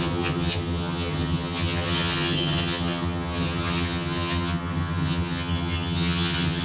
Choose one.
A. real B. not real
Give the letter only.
B